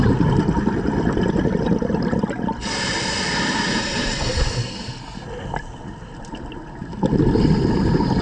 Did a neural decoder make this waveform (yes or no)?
no